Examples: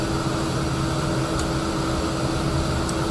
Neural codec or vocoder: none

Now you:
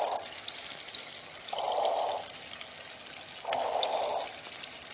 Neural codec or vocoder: none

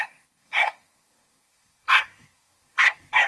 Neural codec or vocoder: codec, SNAC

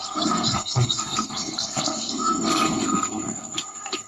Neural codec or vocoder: codec, SNAC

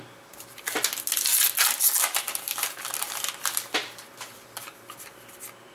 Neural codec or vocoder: none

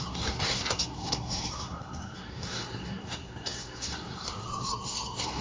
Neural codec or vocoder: codec, SNAC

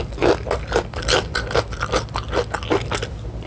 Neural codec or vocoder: none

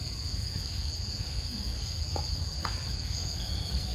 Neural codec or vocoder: codec, SNAC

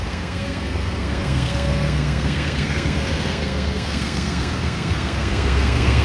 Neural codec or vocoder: codec, SNAC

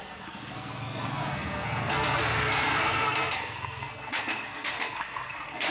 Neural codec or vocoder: codec, SNAC